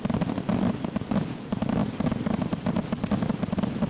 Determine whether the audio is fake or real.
real